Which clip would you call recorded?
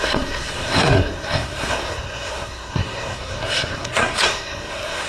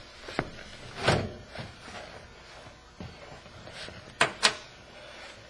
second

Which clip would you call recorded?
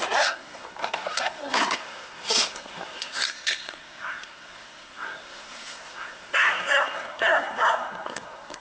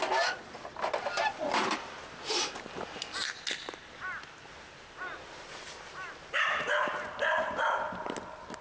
second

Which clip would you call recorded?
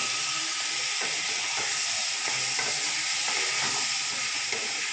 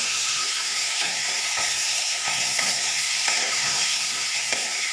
first